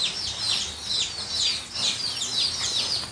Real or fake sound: real